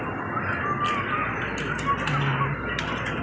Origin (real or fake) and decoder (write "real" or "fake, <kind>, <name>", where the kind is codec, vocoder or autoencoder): real